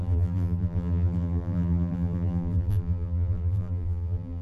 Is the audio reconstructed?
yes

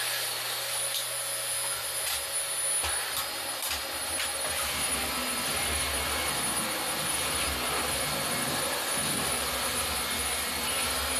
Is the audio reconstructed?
no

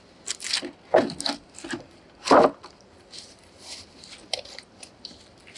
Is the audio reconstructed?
no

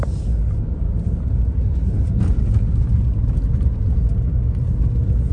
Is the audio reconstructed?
no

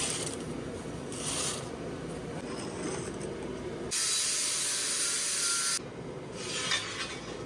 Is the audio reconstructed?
no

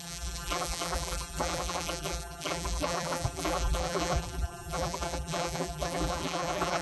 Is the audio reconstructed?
yes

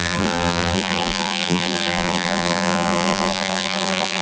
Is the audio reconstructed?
yes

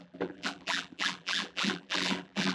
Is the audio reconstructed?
yes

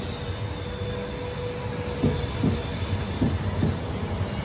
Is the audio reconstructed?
no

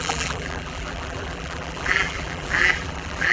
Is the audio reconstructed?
yes